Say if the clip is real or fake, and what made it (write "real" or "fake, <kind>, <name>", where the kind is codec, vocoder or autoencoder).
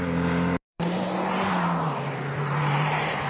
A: fake, vocoder, BigVGAN v2